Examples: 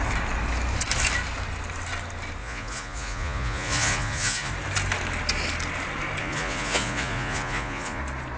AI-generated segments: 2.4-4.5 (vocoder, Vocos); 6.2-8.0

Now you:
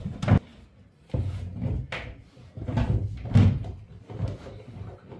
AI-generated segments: none